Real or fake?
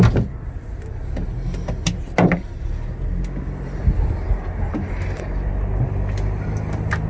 real